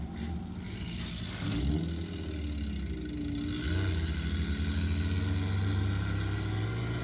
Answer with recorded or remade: recorded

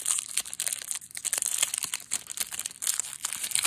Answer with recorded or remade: recorded